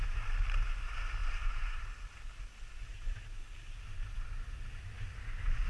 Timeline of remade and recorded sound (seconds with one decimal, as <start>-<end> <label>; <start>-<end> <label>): 0.0-5.7 recorded